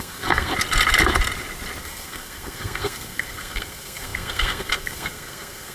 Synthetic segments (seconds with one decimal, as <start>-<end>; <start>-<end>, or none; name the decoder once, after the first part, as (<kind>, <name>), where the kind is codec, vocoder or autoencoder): 0.0-0.5 (codec, SNAC); 1.8-5.7